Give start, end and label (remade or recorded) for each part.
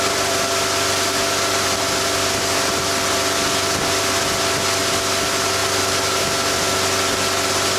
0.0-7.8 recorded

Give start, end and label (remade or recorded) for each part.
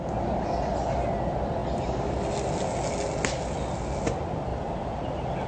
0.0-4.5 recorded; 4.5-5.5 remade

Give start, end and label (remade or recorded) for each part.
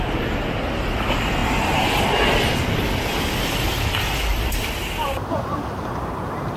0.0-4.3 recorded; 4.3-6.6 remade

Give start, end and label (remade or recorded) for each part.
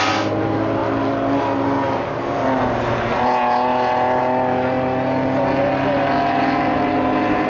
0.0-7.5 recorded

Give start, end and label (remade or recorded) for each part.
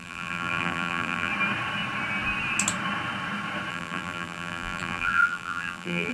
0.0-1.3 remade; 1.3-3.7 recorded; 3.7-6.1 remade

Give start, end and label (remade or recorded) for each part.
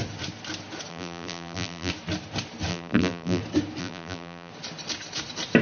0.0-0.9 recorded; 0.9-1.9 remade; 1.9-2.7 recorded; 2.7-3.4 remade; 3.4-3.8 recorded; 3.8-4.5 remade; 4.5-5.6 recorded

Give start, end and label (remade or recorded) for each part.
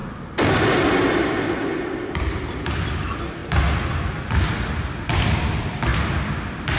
0.0-1.9 recorded; 1.9-3.4 remade; 3.4-5.4 recorded; 5.4-6.8 remade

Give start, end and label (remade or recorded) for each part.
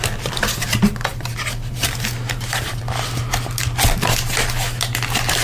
0.0-1.1 recorded; 1.1-2.8 remade; 2.8-5.4 recorded